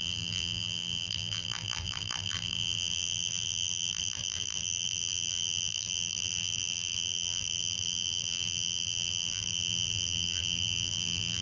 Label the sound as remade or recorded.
remade